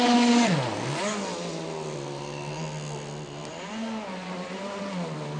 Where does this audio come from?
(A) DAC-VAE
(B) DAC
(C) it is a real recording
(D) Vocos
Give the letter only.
C